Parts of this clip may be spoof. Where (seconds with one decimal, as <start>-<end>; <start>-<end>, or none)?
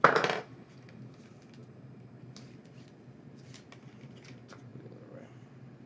4.7-5.9